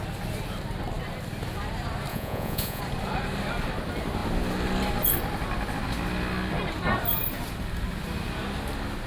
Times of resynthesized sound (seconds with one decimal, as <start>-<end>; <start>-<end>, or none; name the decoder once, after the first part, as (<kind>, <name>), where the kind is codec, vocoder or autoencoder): 2.1-2.8 (vocoder, Vocos)